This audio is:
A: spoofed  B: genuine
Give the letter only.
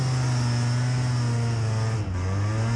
B